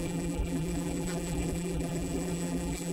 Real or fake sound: fake